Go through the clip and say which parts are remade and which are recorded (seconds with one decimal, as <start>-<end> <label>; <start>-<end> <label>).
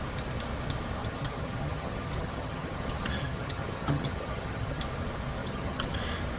0.0-1.0 recorded; 1.0-4.8 remade; 4.8-5.4 recorded; 5.4-6.0 remade; 6.0-6.4 recorded